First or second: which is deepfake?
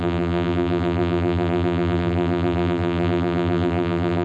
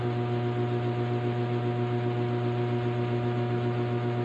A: first